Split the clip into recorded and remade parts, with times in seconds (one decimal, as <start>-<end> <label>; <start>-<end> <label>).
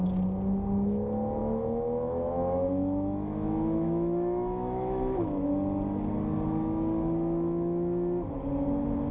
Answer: 0.0-1.4 recorded; 1.4-5.5 remade; 5.5-9.1 recorded